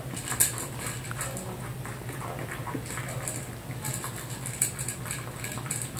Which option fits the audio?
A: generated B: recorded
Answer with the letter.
B